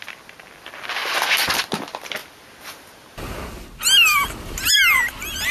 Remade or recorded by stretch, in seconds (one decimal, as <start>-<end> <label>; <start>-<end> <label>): 0.0-5.5 recorded